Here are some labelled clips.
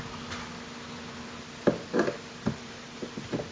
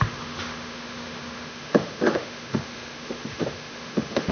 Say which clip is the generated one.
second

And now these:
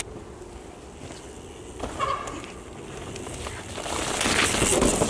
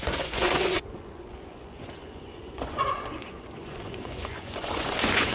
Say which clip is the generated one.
second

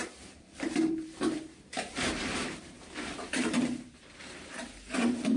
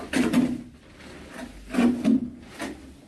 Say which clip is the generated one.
first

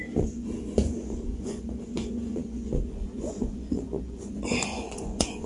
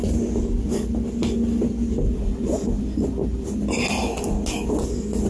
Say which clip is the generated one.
first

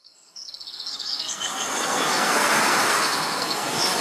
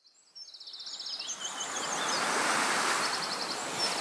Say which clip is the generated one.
first